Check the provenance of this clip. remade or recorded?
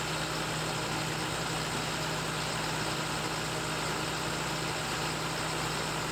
recorded